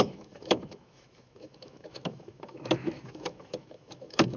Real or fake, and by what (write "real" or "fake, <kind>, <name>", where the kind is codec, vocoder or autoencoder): fake, autoencoder, DAC-VAE